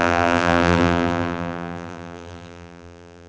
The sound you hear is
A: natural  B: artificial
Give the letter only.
B